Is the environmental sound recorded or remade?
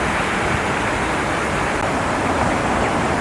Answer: recorded